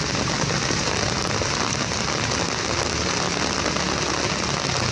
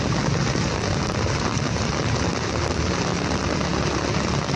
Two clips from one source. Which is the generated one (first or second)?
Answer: second